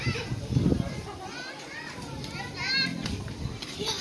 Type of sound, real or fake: real